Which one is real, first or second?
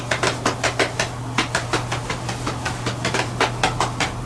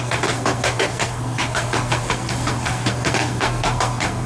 first